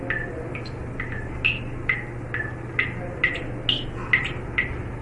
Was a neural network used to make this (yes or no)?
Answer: no